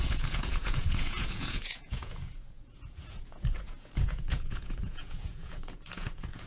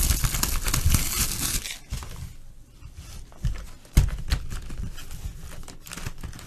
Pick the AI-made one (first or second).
first